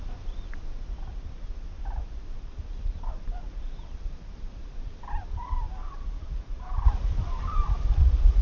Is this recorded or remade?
remade